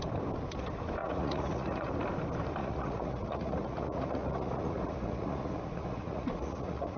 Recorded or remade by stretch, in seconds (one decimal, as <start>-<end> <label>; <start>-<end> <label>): 0.0-1.0 recorded; 1.0-1.9 remade; 1.9-2.6 recorded; 2.6-7.0 remade